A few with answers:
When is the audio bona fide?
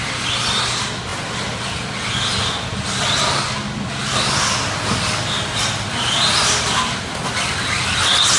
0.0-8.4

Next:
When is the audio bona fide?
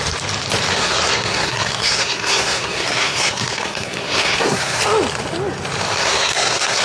0.0-0.7; 4.8-6.0